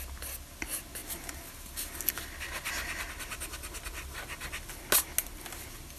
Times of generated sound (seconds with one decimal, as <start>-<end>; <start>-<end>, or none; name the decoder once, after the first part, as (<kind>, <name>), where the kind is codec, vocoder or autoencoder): none